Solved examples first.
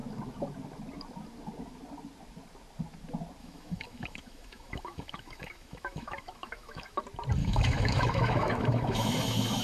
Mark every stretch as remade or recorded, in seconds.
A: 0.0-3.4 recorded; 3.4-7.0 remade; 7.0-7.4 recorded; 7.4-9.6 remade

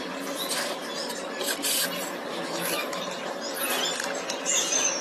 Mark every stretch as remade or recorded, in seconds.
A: 0.0-2.3 recorded; 2.3-3.0 remade; 3.0-5.0 recorded

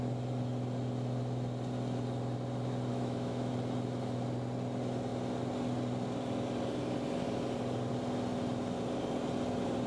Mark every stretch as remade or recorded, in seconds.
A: 0.0-2.9 recorded; 2.9-3.5 remade; 3.5-9.9 recorded